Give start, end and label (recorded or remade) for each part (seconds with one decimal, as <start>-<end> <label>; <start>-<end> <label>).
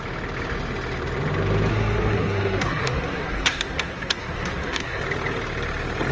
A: 0.0-1.7 recorded; 1.7-5.0 remade; 5.0-6.1 recorded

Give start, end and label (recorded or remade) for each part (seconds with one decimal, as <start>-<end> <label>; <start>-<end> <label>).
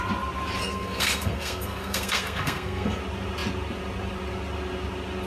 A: 0.0-0.6 recorded; 0.6-3.0 remade; 3.0-5.3 recorded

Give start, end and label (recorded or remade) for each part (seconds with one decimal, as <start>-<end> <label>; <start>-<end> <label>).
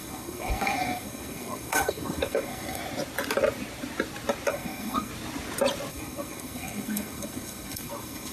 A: 0.0-2.8 remade; 2.8-4.5 recorded; 4.5-5.1 remade; 5.1-5.9 recorded; 5.9-8.3 remade